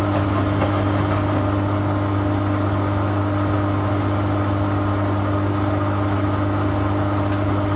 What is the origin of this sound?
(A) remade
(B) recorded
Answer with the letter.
B